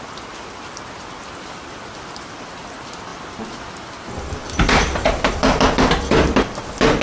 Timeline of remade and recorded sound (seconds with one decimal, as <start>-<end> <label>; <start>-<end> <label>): 0.0-7.0 recorded